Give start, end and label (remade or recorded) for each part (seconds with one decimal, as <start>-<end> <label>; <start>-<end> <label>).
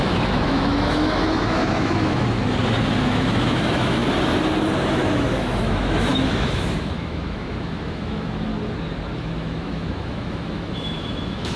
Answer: 0.0-2.4 remade; 2.4-3.0 recorded; 3.0-4.0 remade; 4.0-4.9 recorded; 4.9-8.5 remade; 8.5-9.2 recorded; 9.2-11.6 remade